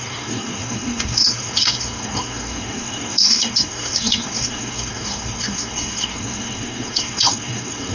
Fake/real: fake